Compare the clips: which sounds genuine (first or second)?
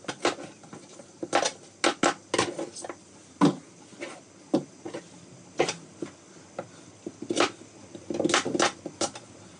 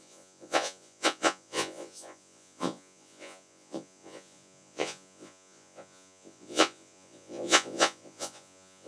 first